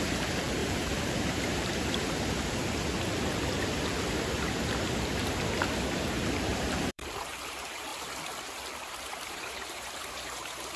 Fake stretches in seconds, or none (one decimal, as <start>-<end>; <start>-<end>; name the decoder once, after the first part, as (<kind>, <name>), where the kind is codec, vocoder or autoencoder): 0.0-2.6 (vocoder, BigVGAN v2); 6.9-7.9; 9.3-10.8